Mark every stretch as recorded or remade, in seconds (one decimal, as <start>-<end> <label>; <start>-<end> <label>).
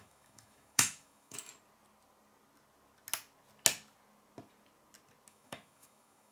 0.0-1.5 remade; 1.5-5.3 recorded; 5.3-6.3 remade